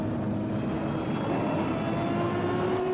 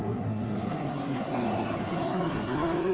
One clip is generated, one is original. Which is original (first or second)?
first